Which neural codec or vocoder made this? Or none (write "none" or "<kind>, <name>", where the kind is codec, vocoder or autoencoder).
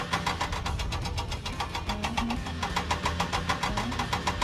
none